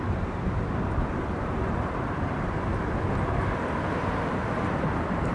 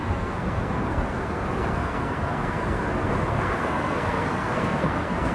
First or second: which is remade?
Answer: second